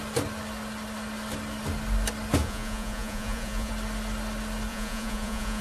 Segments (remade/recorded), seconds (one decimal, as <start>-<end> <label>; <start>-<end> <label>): 0.0-2.4 recorded; 2.4-3.7 remade; 3.7-4.7 recorded; 4.7-5.6 remade